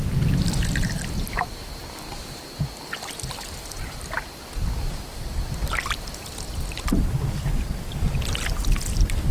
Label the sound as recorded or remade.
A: recorded